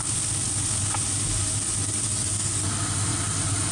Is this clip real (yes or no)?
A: yes